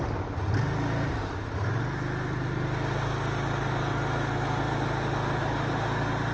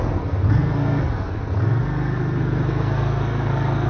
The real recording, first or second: first